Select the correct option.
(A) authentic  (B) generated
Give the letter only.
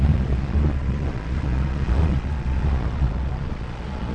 B